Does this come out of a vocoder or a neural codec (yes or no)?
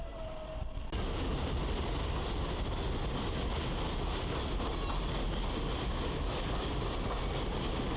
no